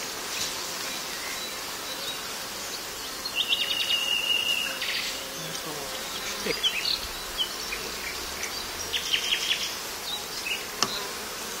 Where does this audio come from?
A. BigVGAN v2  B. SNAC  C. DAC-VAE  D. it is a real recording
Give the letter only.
D